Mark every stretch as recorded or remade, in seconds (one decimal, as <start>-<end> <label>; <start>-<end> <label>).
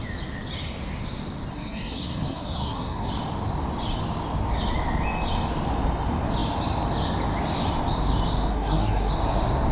0.0-1.5 recorded; 1.5-3.1 remade; 3.1-8.5 recorded; 8.5-9.1 remade; 9.1-9.7 recorded